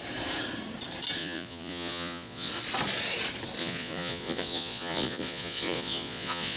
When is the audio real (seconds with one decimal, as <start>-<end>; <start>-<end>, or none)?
0.0-1.2; 2.5-3.6